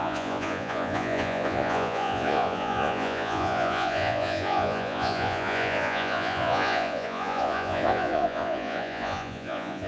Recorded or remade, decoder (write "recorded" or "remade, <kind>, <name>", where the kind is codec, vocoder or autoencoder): remade, vocoder, Vocos